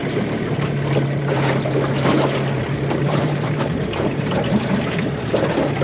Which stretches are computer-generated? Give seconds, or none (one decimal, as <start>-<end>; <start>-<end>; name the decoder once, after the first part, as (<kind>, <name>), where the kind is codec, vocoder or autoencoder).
3.0-5.1 (vocoder, BigVGAN v2)